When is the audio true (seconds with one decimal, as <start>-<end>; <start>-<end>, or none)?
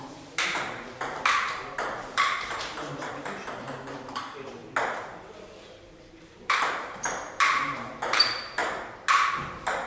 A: 4.6-6.1; 8.6-9.3